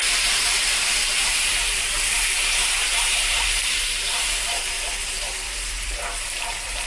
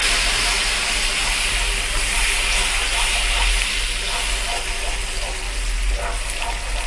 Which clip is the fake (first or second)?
first